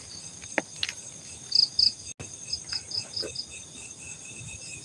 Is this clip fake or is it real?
real